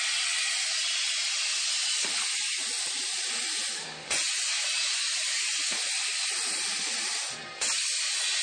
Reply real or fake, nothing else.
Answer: real